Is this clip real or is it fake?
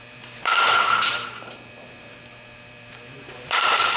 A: fake